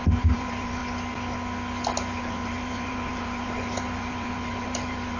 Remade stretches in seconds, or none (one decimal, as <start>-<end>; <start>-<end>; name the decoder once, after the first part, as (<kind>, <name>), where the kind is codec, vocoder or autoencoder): 0.0-0.8 (vocoder, BigVGAN v2); 2.2-5.2